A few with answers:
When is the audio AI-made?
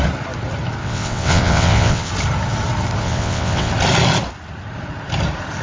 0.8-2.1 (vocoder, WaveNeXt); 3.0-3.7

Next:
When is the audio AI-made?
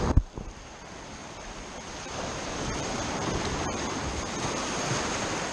1.2-4.5 (vocoder, BigVGAN v2)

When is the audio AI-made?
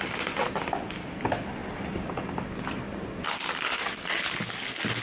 none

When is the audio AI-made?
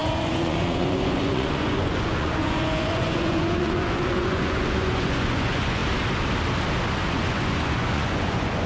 0.0-5.8 (vocoder, Vocos); 7.1-8.7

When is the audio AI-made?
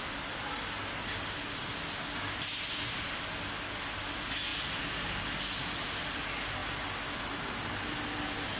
none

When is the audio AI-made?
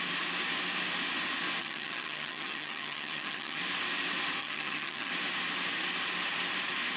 1.6-3.6 (vocoder, HiFi-GAN); 4.4-5.1